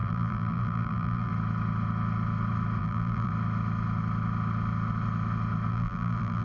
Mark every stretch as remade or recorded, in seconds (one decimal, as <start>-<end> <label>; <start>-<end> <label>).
0.0-1.3 remade; 1.3-2.8 recorded; 2.8-3.3 remade; 3.3-5.7 recorded; 5.7-6.4 remade